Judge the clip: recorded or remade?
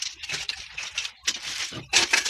remade